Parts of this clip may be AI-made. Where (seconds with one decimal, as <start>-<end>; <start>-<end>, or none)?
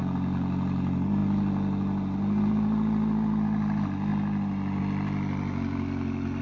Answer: none